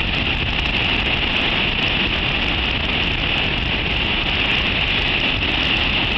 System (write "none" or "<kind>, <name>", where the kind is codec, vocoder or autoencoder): none